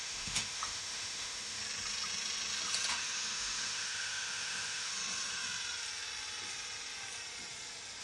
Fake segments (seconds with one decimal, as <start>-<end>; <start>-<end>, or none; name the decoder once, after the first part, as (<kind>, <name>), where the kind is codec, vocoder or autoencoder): 0.0-1.6 (autoencoder, DAC-VAE); 2.9-4.9